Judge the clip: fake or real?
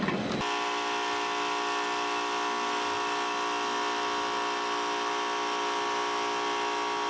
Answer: real